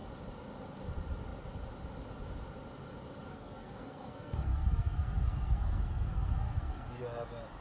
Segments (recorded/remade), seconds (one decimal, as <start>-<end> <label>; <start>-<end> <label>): 0.0-3.3 recorded; 3.3-7.0 remade; 7.0-7.6 recorded